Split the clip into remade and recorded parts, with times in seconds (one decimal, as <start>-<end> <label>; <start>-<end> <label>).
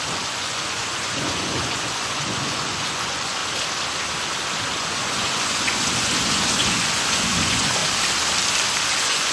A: 0.0-3.4 remade; 3.4-4.7 recorded; 4.7-7.8 remade; 7.8-8.9 recorded; 8.9-9.3 remade